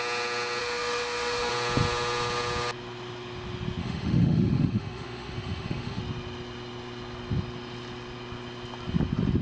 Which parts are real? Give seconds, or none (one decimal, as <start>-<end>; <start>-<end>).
0.0-0.6; 1.5-3.8; 6.0-9.4